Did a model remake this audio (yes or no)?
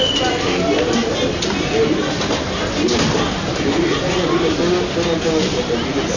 no